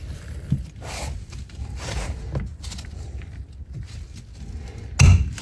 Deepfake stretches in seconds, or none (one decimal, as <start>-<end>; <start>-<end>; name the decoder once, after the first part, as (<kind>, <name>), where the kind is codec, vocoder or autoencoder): none